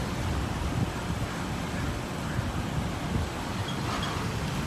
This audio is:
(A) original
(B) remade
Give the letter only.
A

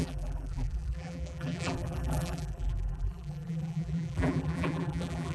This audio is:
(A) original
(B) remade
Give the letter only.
B